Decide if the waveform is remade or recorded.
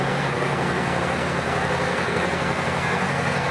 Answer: remade